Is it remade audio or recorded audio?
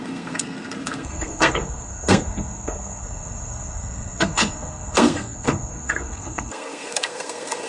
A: remade